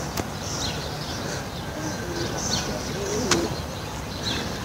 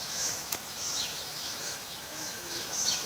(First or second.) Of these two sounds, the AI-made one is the second